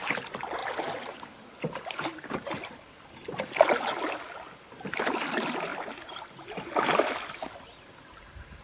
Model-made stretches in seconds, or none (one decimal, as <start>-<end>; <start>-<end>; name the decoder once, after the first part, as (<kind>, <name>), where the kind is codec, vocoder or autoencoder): 0.6-4.2 (vocoder, BigVGAN v2); 5.7-7.0